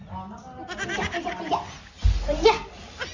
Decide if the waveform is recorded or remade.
recorded